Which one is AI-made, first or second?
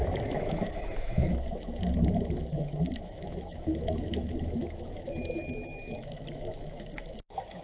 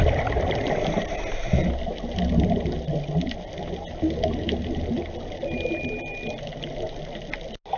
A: first